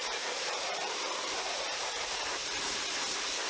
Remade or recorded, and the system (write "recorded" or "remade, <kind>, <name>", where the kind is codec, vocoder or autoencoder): remade, vocoder, BigVGAN v2